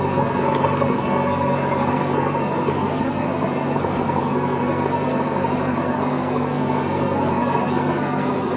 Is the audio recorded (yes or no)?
no